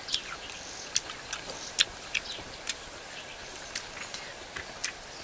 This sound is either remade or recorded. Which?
recorded